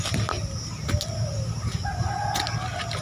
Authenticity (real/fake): real